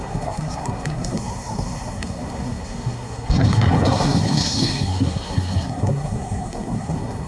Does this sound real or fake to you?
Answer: fake